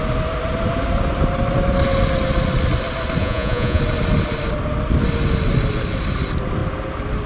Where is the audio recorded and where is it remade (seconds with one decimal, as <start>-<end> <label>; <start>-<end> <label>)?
0.0-3.2 recorded; 3.2-3.8 remade; 3.8-7.3 recorded